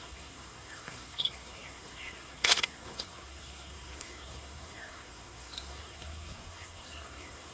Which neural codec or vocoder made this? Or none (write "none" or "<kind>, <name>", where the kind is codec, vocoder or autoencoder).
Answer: codec, SNAC